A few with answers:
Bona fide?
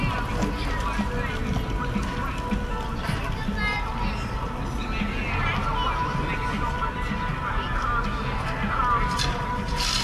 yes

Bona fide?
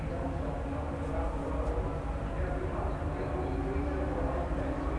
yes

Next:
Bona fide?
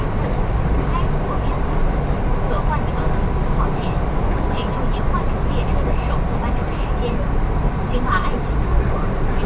yes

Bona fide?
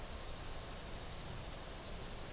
yes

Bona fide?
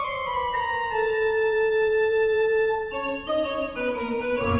no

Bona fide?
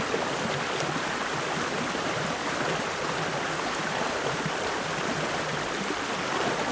no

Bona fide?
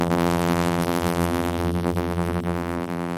no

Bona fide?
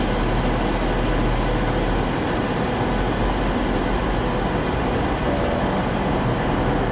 yes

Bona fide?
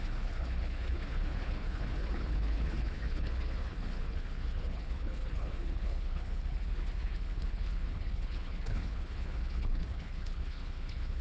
no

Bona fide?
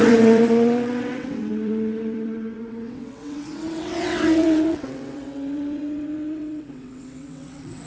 no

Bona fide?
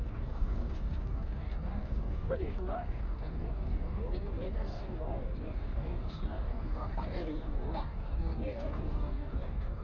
no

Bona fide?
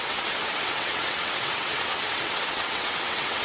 no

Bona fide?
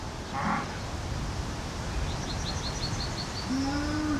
yes